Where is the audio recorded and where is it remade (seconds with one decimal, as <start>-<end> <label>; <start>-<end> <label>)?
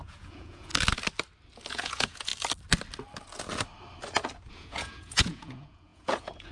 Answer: 0.0-0.7 remade; 0.7-1.7 recorded; 1.7-2.3 remade; 2.3-4.5 recorded; 4.5-6.5 remade